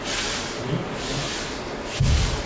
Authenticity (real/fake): fake